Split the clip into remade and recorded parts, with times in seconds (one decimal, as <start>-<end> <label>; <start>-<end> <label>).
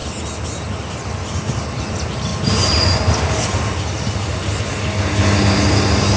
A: 0.0-1.3 remade; 1.3-6.2 recorded